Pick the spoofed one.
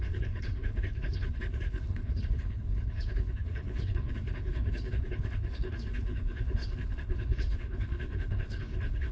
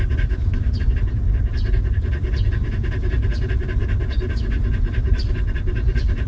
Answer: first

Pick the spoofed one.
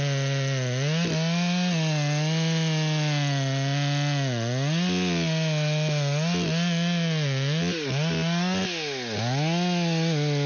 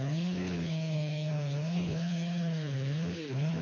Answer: second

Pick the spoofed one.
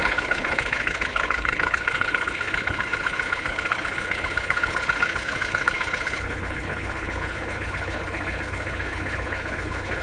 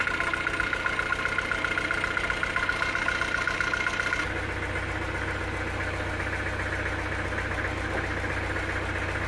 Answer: first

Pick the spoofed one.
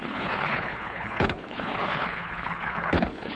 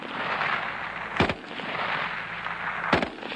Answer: first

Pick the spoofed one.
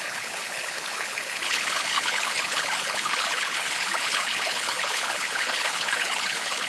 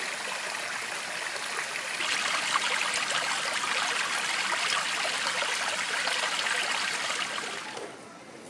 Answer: first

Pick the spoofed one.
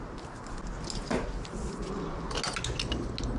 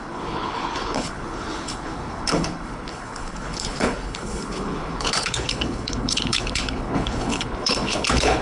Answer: second